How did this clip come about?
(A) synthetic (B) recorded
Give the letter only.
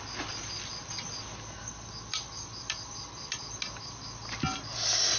B